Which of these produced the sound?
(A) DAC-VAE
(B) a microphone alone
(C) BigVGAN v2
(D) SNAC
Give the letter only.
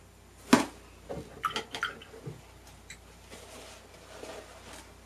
B